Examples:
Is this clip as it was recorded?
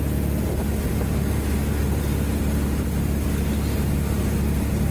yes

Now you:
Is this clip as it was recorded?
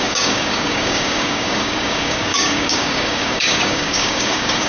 no